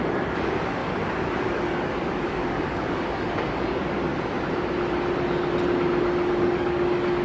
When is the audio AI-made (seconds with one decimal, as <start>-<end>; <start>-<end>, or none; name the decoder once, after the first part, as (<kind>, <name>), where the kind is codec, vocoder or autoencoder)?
0.0-4.1 (codec, DAC); 6.3-7.2